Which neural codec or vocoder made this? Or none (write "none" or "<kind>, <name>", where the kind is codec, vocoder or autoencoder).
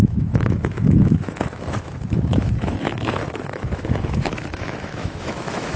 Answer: autoencoder, DAC-VAE